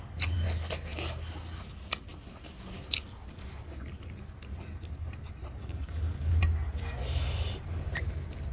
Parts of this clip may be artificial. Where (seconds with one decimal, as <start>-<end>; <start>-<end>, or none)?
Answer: 5.6-6.3